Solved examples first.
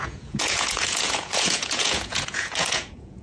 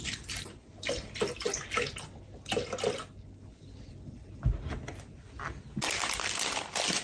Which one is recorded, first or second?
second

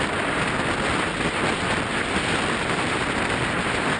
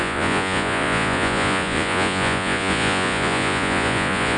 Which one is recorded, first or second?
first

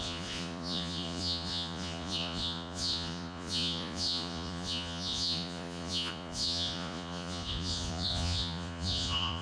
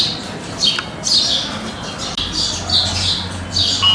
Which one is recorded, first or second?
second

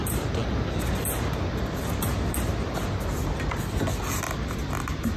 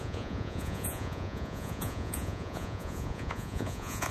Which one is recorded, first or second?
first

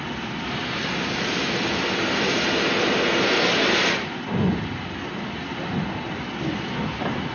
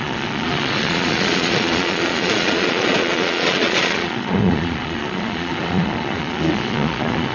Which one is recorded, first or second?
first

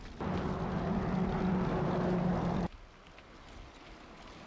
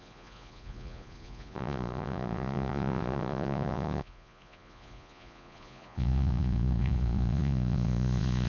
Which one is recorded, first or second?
first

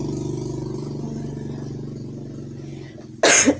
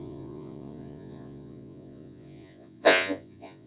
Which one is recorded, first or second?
first